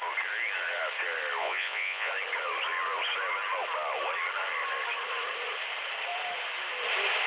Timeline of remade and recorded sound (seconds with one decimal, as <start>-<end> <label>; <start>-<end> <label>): 0.0-1.4 recorded; 1.4-2.1 remade; 2.1-7.3 recorded